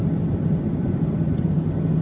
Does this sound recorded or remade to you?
remade